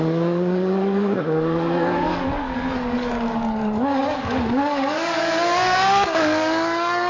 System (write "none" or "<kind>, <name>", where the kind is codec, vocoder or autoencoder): codec, DAC